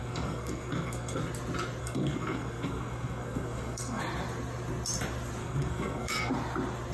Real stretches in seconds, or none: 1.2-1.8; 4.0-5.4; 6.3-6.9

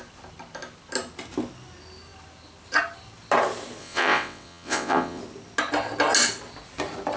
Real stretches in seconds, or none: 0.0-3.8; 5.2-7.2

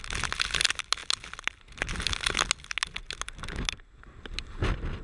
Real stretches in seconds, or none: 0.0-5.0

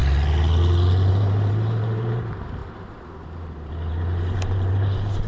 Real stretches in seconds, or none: 0.0-1.1

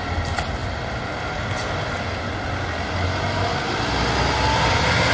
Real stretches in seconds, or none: 0.0-5.1

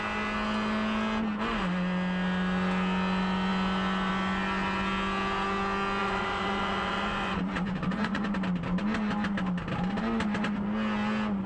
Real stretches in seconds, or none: 0.0-6.0; 8.2-11.5